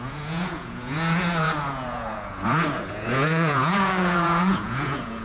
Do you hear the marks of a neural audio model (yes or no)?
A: yes